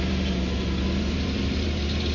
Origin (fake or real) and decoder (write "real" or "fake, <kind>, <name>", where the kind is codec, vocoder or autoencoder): fake, vocoder, BigVGAN v2